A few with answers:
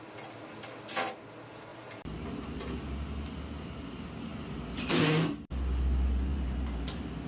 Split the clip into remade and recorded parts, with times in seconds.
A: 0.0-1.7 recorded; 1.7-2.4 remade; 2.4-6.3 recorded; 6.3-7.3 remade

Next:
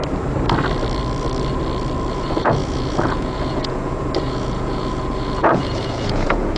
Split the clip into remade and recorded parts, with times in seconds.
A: 0.0-2.1 recorded; 2.1-6.6 remade

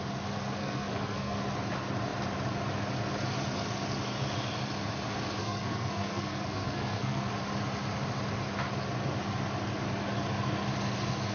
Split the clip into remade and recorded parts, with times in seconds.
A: 0.0-0.6 recorded; 0.6-1.4 remade; 1.4-5.4 recorded; 5.4-7.3 remade; 7.3-11.3 recorded